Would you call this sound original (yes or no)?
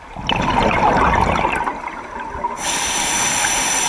yes